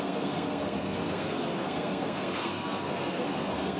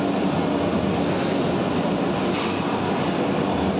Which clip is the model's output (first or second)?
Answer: first